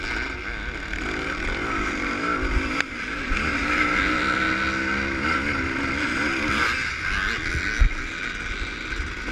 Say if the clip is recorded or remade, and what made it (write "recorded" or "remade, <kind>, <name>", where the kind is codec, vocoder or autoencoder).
recorded